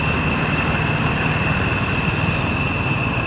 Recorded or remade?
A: recorded